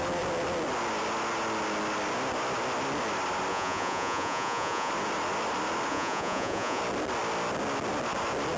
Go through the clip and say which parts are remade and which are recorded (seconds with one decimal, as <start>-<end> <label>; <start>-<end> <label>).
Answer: 0.0-3.5 recorded; 3.5-4.9 remade; 4.9-5.9 recorded; 5.9-6.8 remade; 6.8-8.6 recorded